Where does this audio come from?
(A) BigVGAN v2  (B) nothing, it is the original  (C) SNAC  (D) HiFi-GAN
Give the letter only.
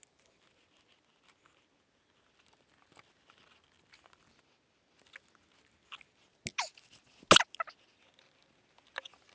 B